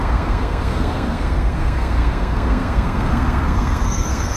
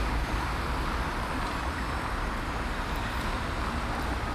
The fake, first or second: first